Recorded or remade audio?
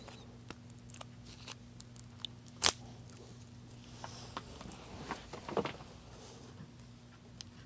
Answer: recorded